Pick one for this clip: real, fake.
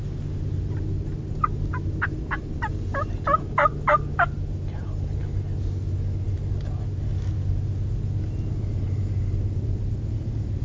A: real